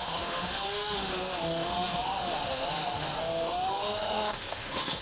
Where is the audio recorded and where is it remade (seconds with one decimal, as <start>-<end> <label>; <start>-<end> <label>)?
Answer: 0.0-5.0 remade